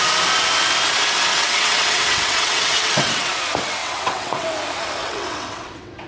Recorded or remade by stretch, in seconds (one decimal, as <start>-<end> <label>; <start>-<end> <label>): 0.0-1.3 recorded; 1.3-3.3 remade; 3.3-3.8 recorded; 3.8-4.5 remade; 4.5-5.0 recorded; 5.0-6.1 remade